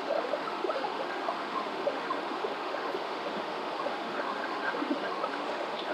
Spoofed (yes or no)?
yes